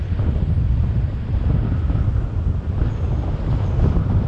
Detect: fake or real fake